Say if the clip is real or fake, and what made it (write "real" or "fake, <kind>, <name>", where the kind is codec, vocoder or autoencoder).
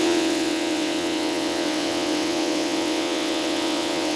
fake, vocoder, WaveNeXt